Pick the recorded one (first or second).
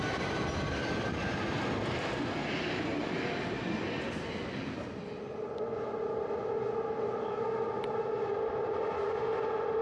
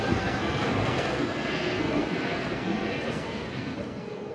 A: first